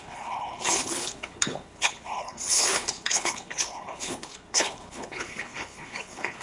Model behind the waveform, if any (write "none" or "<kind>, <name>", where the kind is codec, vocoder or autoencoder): codec, HILCodec